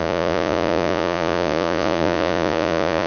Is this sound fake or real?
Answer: fake